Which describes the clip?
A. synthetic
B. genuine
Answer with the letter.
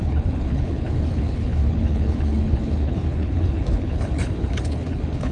A